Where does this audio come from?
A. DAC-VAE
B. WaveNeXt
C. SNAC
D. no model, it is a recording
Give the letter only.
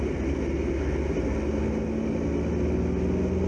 D